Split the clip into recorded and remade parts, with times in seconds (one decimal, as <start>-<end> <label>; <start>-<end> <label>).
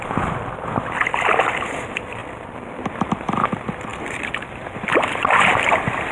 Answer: 0.0-2.2 recorded; 2.2-3.4 remade; 3.4-6.1 recorded